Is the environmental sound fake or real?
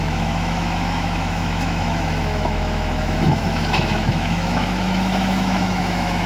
fake